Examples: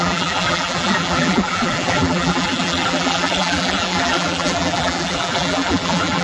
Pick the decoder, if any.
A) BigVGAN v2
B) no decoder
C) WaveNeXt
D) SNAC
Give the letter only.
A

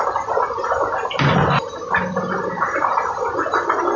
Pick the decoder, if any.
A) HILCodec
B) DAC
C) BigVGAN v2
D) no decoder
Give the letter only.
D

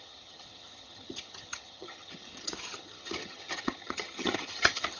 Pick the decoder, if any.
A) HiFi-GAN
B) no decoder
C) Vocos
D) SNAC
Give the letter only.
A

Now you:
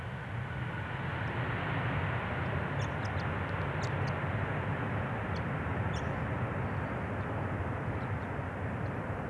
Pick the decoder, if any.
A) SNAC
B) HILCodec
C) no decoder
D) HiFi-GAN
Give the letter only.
C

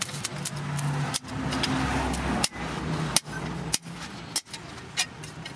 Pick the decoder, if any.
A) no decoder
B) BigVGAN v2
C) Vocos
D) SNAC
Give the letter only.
A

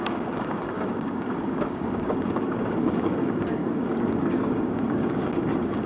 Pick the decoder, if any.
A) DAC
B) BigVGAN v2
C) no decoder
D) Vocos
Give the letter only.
A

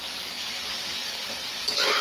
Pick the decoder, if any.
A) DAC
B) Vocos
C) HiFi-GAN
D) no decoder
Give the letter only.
A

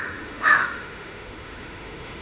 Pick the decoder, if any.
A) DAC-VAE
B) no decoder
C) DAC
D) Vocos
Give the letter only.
A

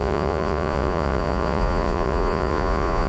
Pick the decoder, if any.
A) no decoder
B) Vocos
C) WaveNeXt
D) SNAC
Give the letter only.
B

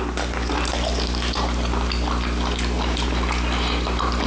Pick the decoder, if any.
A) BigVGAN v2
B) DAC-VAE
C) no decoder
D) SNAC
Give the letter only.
C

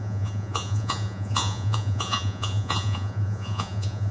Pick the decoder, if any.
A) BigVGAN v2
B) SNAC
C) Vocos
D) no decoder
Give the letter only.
C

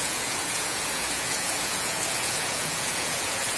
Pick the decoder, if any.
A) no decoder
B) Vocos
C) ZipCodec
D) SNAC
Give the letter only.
B